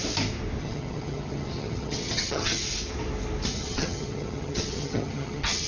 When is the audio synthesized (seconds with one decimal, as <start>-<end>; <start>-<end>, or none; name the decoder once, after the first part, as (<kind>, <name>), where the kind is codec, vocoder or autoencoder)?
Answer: 0.6-2.6 (vocoder, HiFi-GAN); 3.5-5.7